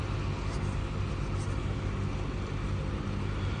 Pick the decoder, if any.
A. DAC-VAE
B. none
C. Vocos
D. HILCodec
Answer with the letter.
B